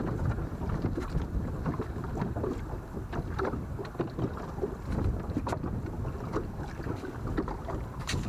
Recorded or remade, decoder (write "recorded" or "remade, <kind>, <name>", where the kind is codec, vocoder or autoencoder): recorded